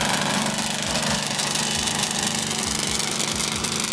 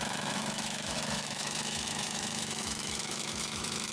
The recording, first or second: first